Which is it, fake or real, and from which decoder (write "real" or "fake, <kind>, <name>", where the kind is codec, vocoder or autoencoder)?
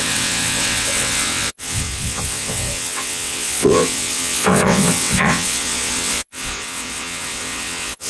fake, vocoder, WaveNeXt